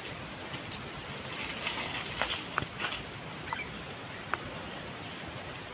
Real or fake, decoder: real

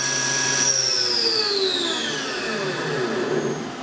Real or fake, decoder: real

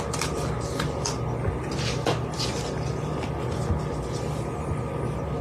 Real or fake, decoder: real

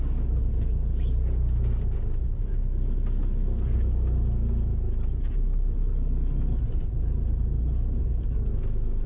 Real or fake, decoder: real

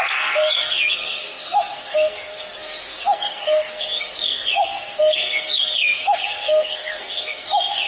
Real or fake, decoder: fake, codec, SNAC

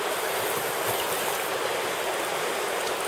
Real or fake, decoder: real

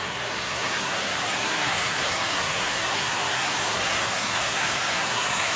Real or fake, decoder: fake, codec, SNAC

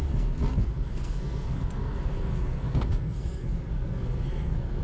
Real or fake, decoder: fake, codec, SNAC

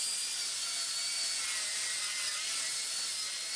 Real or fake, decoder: real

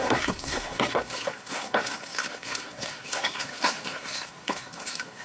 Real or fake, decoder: fake, codec, SNAC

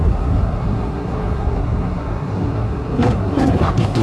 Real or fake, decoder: fake, codec, SNAC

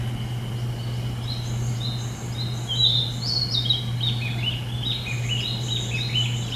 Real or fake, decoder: real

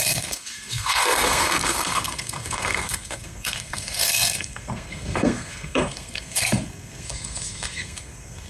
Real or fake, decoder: fake, codec, SNAC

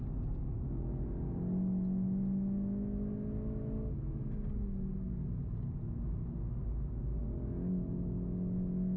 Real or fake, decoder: real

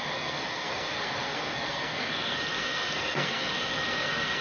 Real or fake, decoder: fake, codec, SNAC